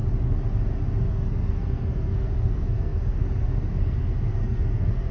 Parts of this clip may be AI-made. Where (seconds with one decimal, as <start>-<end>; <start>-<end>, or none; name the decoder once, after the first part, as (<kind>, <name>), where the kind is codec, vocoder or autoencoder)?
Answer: 1.1-5.1 (codec, SNAC)